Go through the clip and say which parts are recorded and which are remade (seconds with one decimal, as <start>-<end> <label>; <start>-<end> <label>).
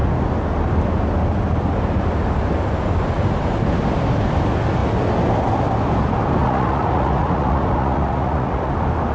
0.0-6.4 recorded; 6.4-8.7 remade; 8.7-9.1 recorded